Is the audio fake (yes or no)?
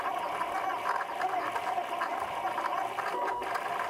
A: no